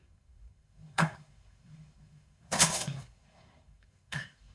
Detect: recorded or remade remade